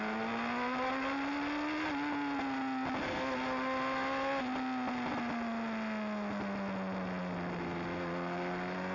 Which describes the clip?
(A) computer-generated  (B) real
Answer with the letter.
B